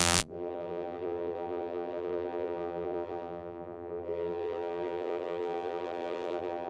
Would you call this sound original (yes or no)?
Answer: no